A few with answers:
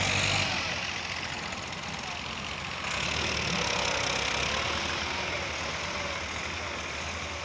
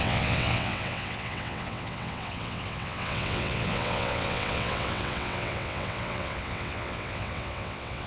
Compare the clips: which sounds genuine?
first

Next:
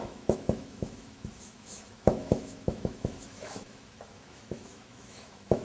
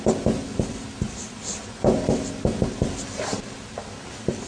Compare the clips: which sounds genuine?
second